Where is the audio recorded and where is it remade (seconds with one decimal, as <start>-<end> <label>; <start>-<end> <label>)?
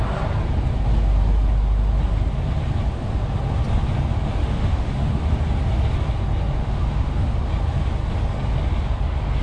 0.0-4.4 recorded; 4.4-5.2 remade; 5.2-6.6 recorded; 6.6-7.5 remade; 7.5-9.4 recorded